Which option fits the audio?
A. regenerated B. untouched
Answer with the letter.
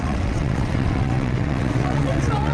A